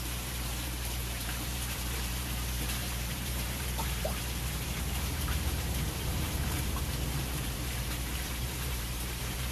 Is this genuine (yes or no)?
no